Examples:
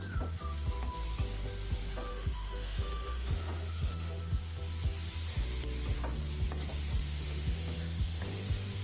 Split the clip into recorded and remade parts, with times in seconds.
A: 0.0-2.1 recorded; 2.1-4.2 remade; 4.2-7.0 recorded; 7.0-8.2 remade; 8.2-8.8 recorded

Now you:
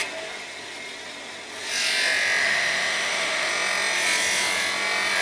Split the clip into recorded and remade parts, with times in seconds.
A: 0.0-2.4 recorded; 2.4-3.5 remade; 3.5-5.2 recorded